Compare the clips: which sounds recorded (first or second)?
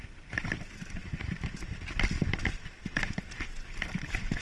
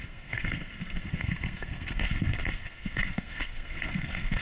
first